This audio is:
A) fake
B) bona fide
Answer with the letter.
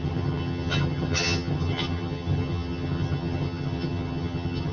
A